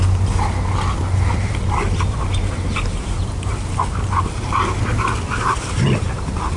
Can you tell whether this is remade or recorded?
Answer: recorded